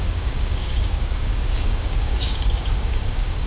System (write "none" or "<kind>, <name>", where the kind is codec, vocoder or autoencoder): codec, DAC